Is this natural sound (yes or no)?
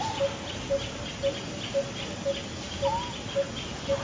yes